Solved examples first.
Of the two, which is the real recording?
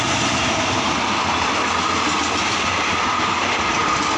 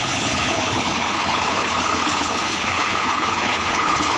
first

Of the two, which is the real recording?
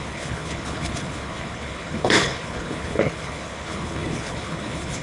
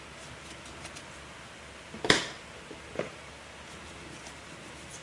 second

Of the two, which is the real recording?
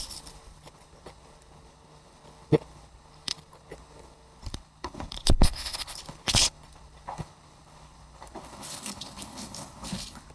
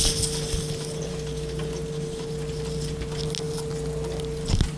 second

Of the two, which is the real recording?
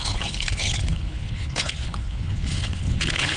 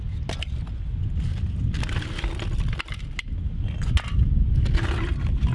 second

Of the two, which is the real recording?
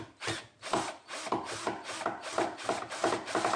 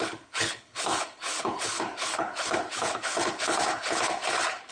first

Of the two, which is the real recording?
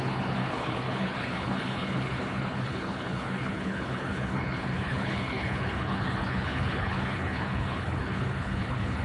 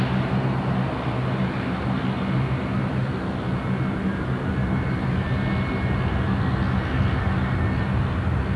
second